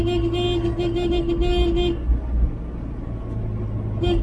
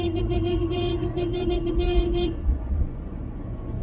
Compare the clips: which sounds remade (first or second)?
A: second